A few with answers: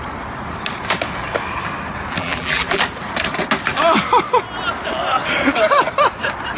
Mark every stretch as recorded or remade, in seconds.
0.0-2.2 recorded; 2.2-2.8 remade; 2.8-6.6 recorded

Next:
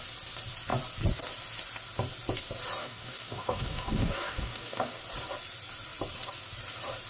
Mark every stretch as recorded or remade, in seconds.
0.0-2.8 recorded; 2.8-5.0 remade; 5.0-7.1 recorded

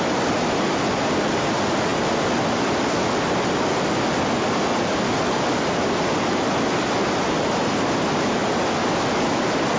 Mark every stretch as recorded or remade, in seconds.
0.0-9.8 recorded

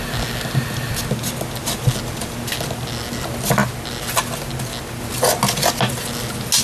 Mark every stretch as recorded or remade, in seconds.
0.0-6.6 recorded

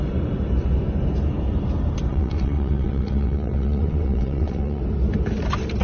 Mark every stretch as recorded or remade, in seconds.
0.0-2.1 recorded; 2.1-4.8 remade; 4.8-5.8 recorded

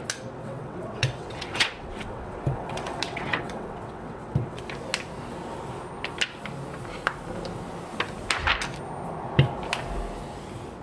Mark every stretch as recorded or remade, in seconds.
0.0-0.4 recorded; 0.4-4.6 remade; 4.6-10.8 recorded

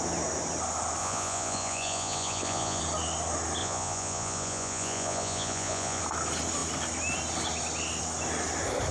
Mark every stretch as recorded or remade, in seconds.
0.0-1.0 recorded; 1.0-2.8 remade; 2.8-3.6 recorded; 3.6-6.0 remade; 6.0-8.9 recorded

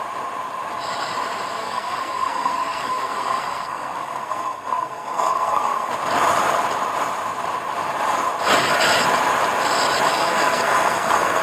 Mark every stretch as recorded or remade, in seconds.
0.0-1.6 recorded; 1.6-5.9 remade; 5.9-10.1 recorded; 10.1-11.4 remade